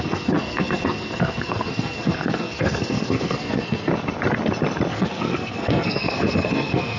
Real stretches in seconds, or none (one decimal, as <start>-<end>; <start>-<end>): 3.9-4.9